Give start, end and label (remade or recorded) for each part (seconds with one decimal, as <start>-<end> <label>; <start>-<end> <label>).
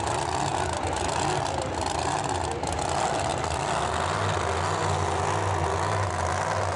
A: 0.0-6.8 recorded